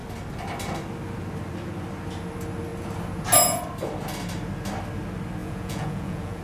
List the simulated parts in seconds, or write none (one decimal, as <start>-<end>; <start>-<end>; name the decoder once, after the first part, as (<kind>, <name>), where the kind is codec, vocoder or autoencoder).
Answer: 5.4-6.4 (vocoder, Vocos)